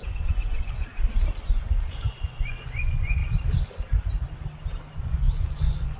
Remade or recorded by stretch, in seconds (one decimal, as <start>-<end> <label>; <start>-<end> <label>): 0.0-0.9 remade; 0.9-1.5 recorded; 1.5-3.2 remade; 3.2-5.0 recorded; 5.0-6.0 remade